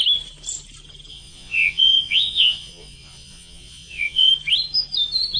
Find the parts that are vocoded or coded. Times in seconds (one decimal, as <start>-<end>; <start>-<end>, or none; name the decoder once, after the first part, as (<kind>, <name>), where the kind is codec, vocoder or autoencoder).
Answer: 1.1-4.3 (vocoder, Vocos)